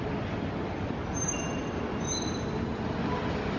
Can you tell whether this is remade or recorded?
recorded